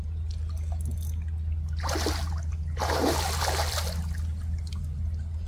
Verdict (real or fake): real